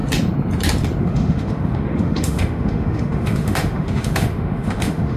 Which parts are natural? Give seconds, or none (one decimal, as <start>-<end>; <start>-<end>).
0.0-1.0